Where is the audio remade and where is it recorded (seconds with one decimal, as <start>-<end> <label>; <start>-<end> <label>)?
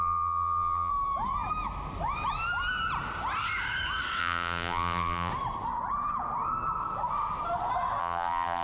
0.0-0.9 remade; 0.9-4.2 recorded; 4.2-5.3 remade; 5.3-8.0 recorded; 8.0-8.6 remade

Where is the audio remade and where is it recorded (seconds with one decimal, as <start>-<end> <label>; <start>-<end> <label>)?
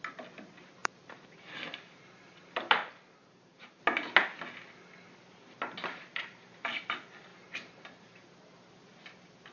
0.0-0.8 recorded; 0.8-2.0 remade; 2.0-2.8 recorded; 2.8-3.8 remade; 3.8-5.8 recorded; 5.8-6.8 remade; 6.8-7.3 recorded; 7.3-8.8 remade; 8.8-9.5 recorded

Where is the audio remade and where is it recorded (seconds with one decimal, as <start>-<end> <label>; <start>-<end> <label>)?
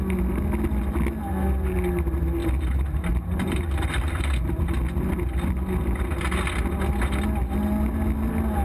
0.0-2.4 recorded; 2.4-4.7 remade; 4.7-8.6 recorded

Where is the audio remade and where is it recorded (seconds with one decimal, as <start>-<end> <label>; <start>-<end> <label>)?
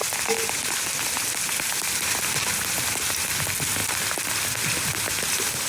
0.0-5.7 recorded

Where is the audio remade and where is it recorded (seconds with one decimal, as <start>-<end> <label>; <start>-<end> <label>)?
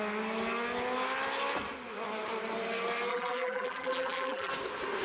0.0-3.1 recorded; 3.1-4.5 remade; 4.5-5.0 recorded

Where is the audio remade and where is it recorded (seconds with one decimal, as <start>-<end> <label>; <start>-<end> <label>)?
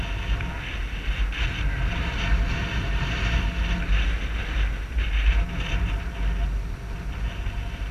0.0-2.6 recorded; 2.6-3.4 remade; 3.4-7.9 recorded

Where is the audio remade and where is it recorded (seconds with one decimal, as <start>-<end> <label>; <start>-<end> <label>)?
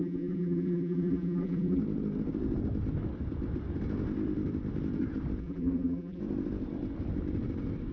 0.0-1.8 remade; 1.8-5.4 recorded; 5.4-6.2 remade; 6.2-7.9 recorded